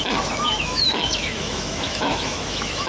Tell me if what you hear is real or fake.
fake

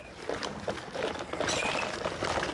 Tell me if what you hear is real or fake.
real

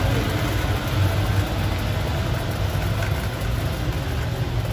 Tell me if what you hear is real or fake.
real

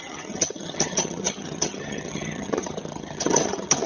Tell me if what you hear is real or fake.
fake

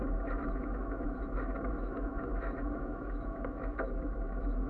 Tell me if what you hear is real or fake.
fake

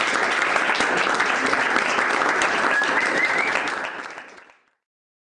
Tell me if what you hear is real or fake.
fake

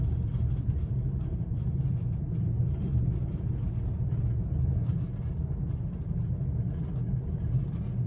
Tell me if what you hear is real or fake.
real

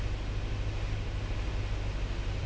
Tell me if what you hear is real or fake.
real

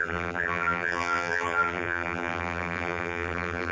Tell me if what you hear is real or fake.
fake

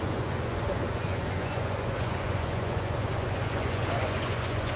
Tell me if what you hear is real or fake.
fake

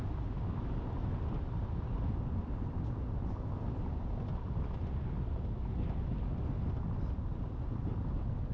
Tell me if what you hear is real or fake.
real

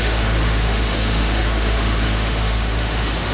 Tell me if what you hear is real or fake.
fake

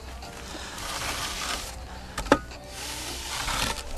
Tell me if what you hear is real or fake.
real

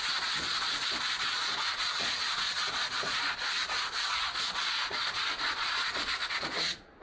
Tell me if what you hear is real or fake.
fake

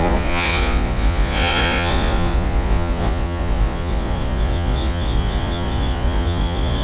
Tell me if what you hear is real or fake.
fake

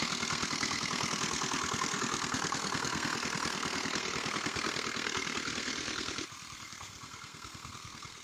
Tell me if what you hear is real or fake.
fake